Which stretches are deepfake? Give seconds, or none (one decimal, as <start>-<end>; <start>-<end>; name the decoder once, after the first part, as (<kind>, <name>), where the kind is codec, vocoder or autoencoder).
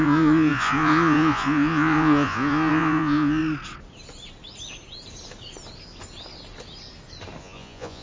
0.0-3.4 (vocoder, Vocos); 7.4-8.0